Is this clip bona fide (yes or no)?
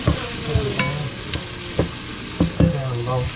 yes